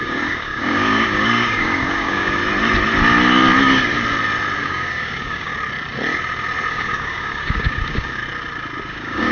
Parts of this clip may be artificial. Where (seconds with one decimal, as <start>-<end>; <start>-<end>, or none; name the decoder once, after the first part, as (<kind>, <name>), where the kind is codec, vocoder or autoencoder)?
0.0-2.4 (codec, DAC); 4.6-5.5; 6.7-8.2; 8.9-9.3

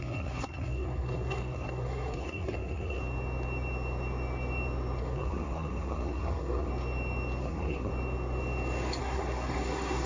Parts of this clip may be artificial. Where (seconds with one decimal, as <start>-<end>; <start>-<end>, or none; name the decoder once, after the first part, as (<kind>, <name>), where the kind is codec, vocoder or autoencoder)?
0.0-3.0 (codec, SNAC); 5.0-6.7; 7.4-7.9; 9.0-10.1

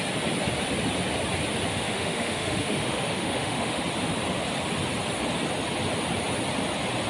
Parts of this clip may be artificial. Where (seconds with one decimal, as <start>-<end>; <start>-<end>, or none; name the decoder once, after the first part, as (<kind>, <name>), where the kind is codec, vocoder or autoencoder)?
1.7-3.8 (autoencoder, DAC-VAE)

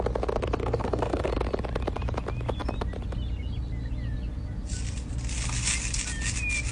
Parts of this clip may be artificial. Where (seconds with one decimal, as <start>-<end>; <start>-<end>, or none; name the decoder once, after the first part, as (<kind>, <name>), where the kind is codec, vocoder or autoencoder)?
0.6-1.3 (codec, SNAC)

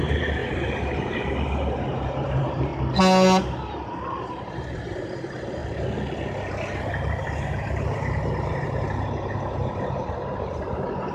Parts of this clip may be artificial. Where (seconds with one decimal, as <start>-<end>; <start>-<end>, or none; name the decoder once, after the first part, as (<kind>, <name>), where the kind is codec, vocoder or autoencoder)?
0.0-2.7 (vocoder, BigVGAN v2); 3.4-5.6; 6.9-11.1

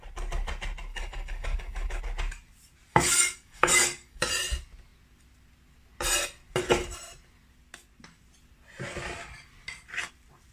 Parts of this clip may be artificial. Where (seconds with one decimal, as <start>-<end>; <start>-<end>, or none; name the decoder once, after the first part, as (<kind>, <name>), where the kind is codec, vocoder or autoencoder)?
0.9-2.0 (codec, DAC); 2.9-4.3

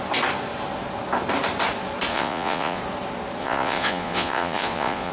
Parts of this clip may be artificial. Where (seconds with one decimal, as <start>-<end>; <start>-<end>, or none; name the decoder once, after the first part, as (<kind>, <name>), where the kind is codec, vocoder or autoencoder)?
2.1-2.8 (vocoder, Vocos); 3.4-5.1

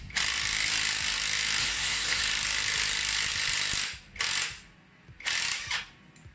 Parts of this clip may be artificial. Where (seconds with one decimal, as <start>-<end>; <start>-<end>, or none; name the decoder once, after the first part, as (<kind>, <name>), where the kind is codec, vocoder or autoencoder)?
1.6-2.2 (codec, SNAC)